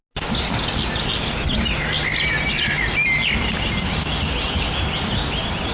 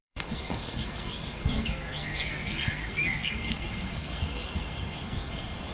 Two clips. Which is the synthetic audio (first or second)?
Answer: second